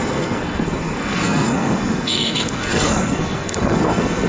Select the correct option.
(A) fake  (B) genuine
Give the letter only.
A